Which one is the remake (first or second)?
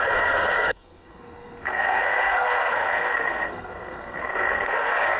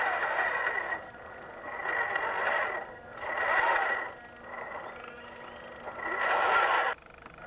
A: first